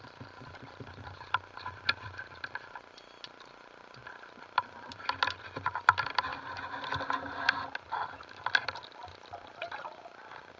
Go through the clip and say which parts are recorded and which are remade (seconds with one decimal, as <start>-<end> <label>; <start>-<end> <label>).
0.0-10.6 recorded